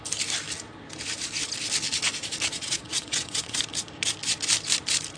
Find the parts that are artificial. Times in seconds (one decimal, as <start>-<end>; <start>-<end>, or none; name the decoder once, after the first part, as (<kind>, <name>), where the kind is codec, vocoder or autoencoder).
2.5-3.6 (vocoder, WaveNeXt)